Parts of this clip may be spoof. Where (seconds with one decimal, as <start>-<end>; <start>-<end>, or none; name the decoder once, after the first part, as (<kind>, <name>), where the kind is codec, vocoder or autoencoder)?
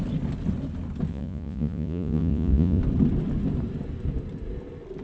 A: 1.1-2.8 (vocoder, Vocos)